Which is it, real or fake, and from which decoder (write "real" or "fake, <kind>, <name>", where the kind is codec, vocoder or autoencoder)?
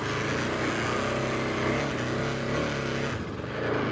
real